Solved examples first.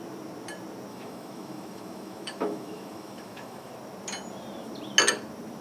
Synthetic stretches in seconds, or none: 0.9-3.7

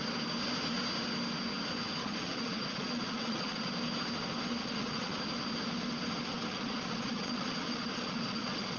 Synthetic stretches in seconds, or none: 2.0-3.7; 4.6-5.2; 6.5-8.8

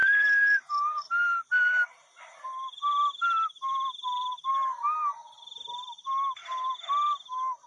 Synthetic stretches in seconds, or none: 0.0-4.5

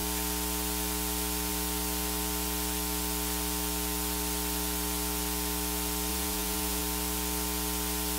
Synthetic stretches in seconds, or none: 6.1-6.8

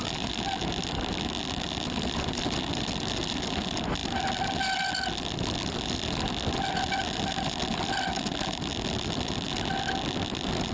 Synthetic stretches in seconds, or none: none

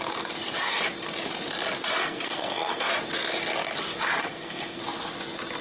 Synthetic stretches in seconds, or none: 2.0-2.9; 4.2-4.8